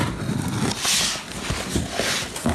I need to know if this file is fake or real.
real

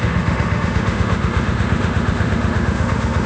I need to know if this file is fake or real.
fake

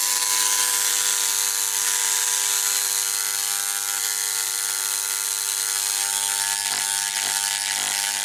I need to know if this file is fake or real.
real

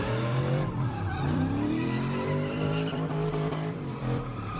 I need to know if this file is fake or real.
fake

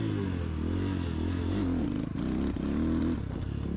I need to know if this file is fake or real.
real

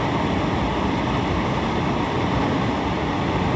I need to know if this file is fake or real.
real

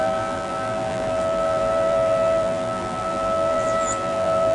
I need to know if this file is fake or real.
fake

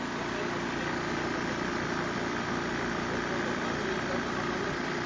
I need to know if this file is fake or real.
real